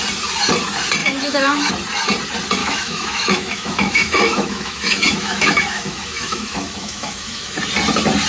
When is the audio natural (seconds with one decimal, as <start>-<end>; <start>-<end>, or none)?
0.0-1.0; 1.7-2.6; 7.6-8.3